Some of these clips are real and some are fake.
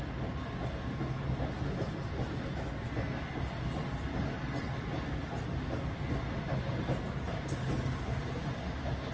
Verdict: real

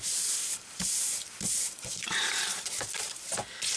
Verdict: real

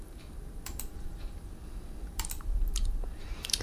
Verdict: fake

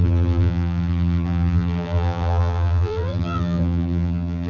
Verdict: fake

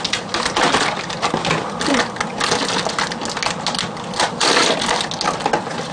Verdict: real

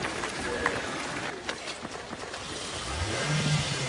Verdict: real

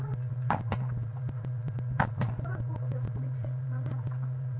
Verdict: fake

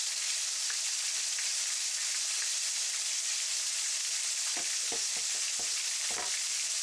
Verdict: real